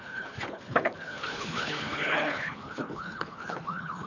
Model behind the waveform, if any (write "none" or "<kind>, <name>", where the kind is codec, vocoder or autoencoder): codec, HILCodec